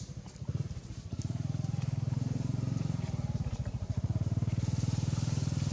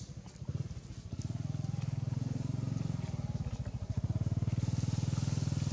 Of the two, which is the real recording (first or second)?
second